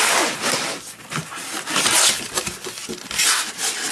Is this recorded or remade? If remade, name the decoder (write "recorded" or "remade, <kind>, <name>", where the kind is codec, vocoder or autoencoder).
recorded